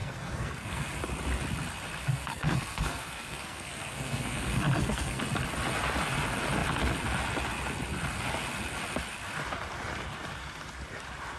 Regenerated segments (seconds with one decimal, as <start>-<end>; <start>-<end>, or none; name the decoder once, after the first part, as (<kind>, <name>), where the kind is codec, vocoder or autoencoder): 0.0-0.9 (codec, SNAC); 2.0-5.2